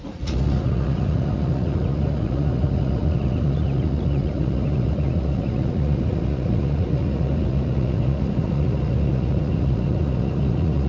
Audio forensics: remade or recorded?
remade